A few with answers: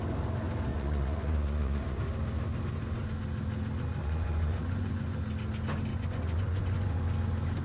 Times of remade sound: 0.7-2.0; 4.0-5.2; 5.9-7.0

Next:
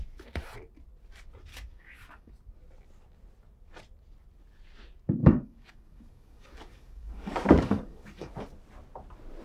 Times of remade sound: 1.5-2.3; 5.2-8.3

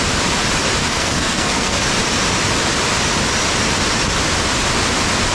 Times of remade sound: 0.8-1.8

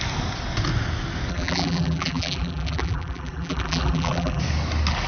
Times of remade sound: 1.3-4.4

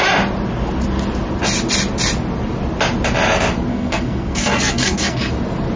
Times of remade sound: 3.7-5.3

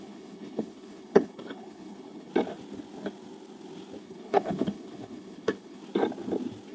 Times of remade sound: 0.0-2.3; 4.0-5.8

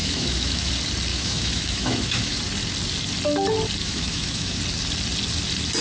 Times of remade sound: 0.0-0.7; 1.1-2.4; 3.8-4.6

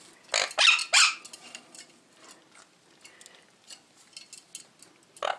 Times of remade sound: none